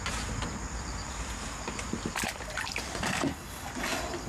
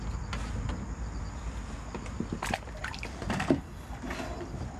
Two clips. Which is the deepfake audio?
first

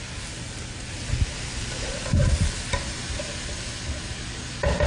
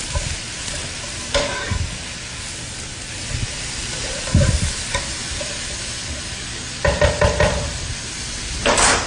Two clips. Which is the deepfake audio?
second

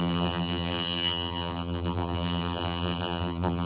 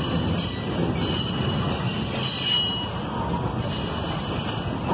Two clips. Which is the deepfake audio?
first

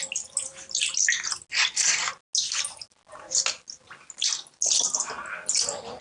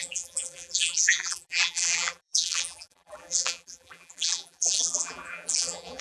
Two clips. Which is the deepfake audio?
second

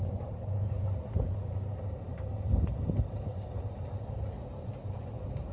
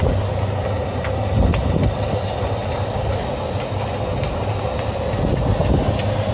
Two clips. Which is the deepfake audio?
first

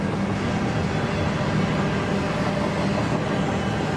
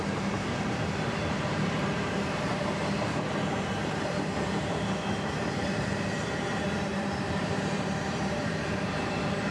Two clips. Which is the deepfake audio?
second